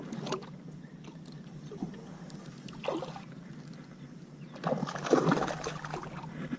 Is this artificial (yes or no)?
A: no